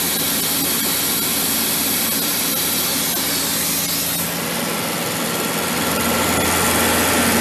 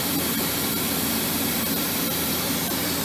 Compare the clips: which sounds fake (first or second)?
second